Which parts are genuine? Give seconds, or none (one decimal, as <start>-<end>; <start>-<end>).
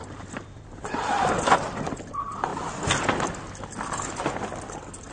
2.5-5.1